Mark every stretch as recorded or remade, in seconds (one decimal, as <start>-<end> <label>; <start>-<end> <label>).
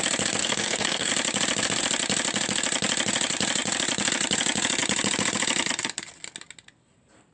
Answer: 0.0-0.4 recorded; 0.4-1.1 remade; 1.1-7.3 recorded